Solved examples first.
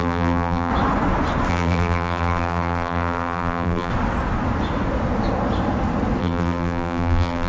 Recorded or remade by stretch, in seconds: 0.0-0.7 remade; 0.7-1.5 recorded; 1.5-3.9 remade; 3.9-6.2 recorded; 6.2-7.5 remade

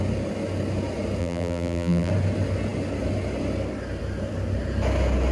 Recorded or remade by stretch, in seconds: 0.0-1.2 recorded; 1.2-2.1 remade; 2.1-5.3 recorded

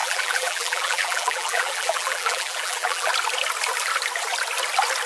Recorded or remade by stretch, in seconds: 0.0-3.1 remade; 3.1-5.1 recorded

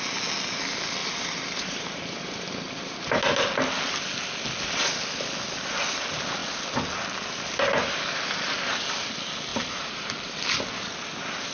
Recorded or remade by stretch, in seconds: 0.0-1.0 recorded; 1.0-3.2 remade; 3.2-9.5 recorded; 9.5-10.6 remade; 10.6-11.5 recorded